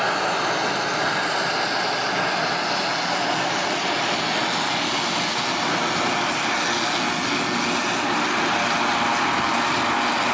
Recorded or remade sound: recorded